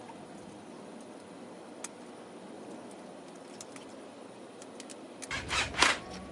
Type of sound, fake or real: real